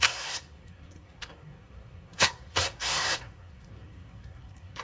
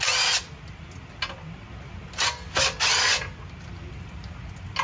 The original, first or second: second